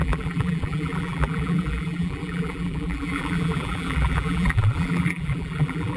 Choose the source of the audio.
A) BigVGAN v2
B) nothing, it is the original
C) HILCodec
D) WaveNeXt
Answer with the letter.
A